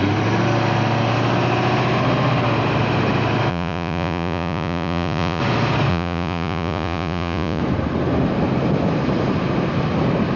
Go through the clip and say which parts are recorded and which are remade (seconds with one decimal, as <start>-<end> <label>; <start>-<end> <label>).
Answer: 0.0-3.5 recorded; 3.5-5.4 remade; 5.4-5.9 recorded; 5.9-7.6 remade; 7.6-10.4 recorded